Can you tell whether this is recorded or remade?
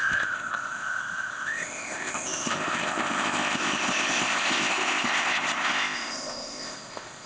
remade